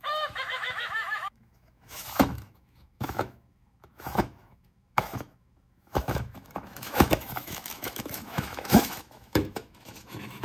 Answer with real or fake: fake